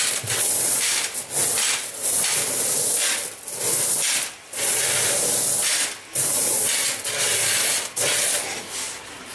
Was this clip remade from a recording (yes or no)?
no